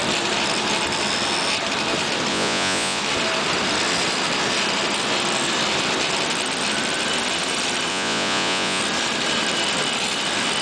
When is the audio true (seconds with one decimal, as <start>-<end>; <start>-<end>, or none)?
0.0-2.3; 3.0-7.9; 8.8-10.6